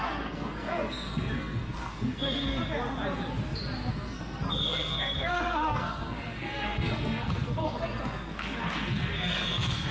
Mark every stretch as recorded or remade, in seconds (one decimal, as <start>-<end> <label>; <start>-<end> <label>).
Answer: 0.0-2.6 remade; 2.6-3.9 recorded; 3.9-9.9 remade